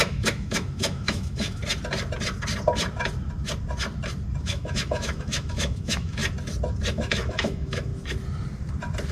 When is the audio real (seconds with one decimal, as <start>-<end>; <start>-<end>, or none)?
1.6-4.4; 6.2-6.9; 7.9-9.1